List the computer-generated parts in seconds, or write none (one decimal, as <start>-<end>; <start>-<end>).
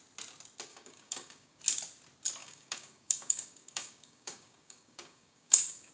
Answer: 0.7-1.6; 2.4-5.9